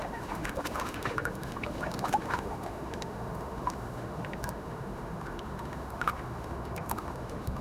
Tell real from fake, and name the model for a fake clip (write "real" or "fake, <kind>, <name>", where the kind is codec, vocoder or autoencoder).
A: fake, autoencoder, DAC-VAE